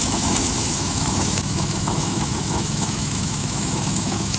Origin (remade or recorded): remade